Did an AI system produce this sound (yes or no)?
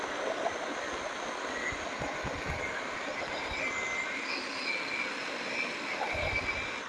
no